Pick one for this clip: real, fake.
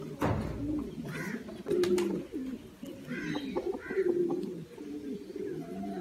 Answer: real